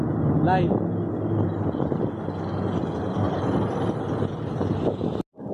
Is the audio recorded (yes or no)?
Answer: yes